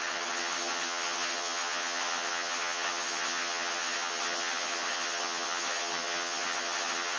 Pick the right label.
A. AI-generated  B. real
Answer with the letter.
A